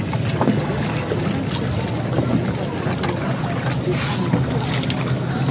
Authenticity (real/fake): real